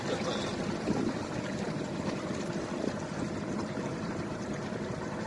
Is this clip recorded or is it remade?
recorded